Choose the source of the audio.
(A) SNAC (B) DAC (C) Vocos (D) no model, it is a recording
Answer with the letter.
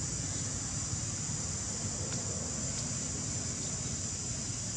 D